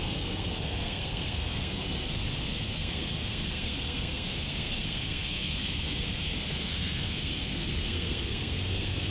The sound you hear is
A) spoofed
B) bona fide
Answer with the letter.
A